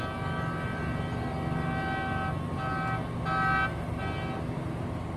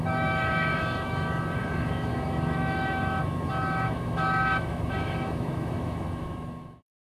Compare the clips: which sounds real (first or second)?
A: first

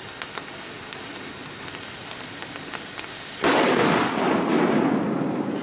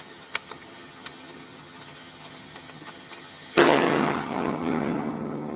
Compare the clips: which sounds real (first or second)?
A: first